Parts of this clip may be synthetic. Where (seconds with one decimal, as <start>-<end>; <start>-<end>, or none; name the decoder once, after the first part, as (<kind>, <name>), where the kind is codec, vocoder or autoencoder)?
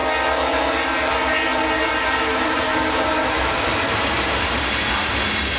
0.0-5.6 (vocoder, BigVGAN v2)